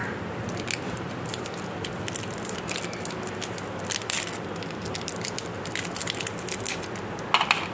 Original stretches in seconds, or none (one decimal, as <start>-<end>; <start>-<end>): 0.0-7.7